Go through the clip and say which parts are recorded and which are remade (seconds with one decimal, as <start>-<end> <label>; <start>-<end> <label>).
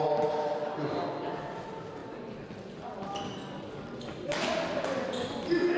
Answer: 0.0-5.8 recorded